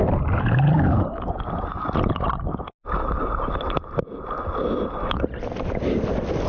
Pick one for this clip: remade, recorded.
recorded